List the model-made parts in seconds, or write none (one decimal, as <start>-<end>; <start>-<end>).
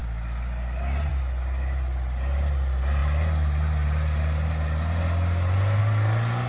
none